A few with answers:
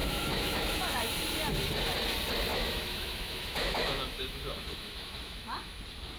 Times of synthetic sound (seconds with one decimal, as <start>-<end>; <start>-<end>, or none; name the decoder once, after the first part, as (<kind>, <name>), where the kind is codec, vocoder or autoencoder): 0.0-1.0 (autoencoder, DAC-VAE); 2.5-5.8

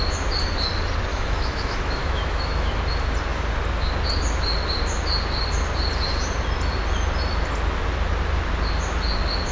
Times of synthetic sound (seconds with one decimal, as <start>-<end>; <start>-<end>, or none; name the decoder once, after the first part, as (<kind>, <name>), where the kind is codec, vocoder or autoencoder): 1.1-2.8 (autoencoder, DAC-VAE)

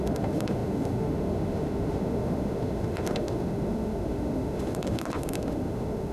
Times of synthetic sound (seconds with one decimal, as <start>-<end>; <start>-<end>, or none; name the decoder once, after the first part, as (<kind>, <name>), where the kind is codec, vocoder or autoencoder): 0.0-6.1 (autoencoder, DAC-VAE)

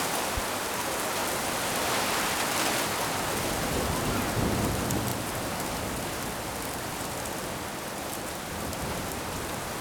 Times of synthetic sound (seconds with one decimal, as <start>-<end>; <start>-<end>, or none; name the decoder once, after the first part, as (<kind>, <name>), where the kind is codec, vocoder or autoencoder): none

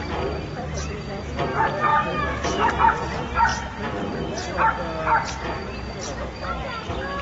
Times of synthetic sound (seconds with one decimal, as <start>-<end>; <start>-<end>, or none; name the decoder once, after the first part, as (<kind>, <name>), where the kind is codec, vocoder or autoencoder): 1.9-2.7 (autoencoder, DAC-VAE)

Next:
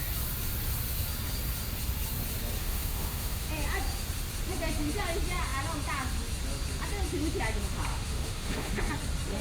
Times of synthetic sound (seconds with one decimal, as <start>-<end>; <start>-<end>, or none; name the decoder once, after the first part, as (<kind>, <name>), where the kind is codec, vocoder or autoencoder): 2.6-3.5 (autoencoder, DAC-VAE); 7.9-8.9

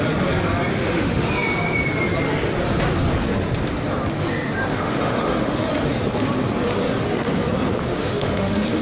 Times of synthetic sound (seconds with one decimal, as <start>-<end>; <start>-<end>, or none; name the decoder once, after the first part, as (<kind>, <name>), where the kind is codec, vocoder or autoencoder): 0.7-1.3 (autoencoder, DAC-VAE); 4.7-5.7; 7.9-8.8